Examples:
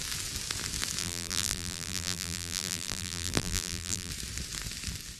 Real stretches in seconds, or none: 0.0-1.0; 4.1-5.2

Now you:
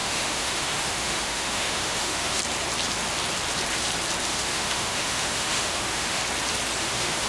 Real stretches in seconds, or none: 2.4-4.3; 6.2-6.8

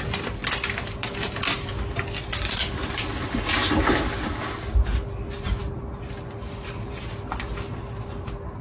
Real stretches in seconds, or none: 0.0-8.6

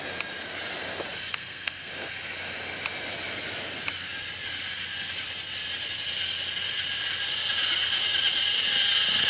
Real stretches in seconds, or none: 0.0-1.3; 1.9-9.3

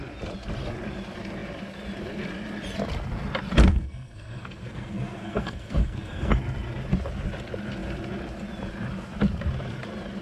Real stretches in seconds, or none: 0.0-3.7; 6.3-10.2